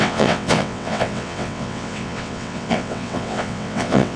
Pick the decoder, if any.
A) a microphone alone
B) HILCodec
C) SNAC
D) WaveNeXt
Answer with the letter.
D